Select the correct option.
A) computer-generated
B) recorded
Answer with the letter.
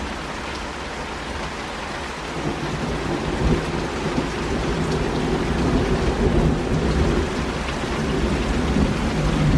B